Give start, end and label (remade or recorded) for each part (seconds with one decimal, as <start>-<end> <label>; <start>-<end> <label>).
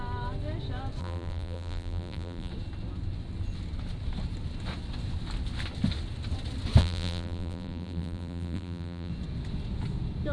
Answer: 0.0-1.0 recorded; 1.0-2.5 remade; 2.5-6.8 recorded; 6.8-9.1 remade; 9.1-10.3 recorded